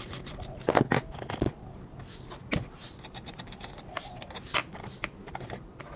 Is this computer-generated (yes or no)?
no